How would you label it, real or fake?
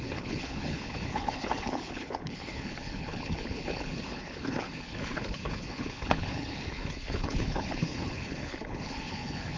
fake